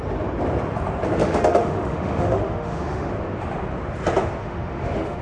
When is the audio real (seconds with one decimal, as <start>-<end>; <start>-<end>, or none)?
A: 0.0-1.2; 3.1-4.4